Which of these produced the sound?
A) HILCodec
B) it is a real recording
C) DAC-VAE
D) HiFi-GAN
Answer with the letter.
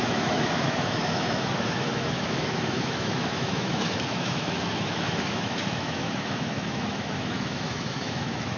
C